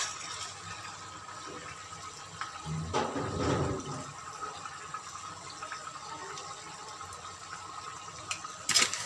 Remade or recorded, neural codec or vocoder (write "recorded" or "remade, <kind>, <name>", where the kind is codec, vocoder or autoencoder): recorded